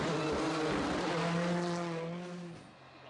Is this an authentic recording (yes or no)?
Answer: yes